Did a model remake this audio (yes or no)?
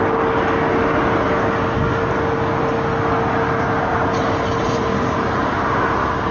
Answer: no